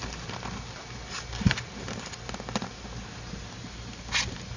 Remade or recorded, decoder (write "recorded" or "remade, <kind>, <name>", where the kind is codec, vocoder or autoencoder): recorded